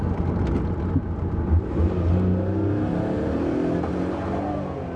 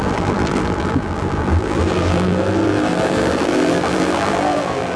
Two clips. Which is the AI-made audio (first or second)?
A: second